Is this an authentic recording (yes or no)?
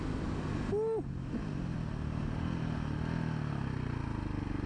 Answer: yes